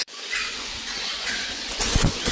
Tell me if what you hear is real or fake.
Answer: fake